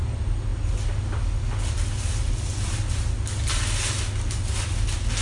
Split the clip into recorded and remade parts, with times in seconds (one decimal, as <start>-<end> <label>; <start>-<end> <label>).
0.0-5.2 recorded